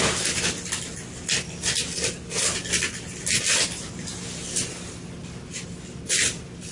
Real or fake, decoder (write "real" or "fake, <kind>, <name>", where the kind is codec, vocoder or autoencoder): real